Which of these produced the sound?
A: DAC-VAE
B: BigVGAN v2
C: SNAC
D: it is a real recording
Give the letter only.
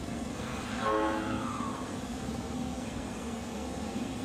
C